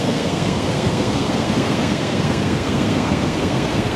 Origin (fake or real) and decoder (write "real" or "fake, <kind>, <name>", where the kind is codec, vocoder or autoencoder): fake, codec, SNAC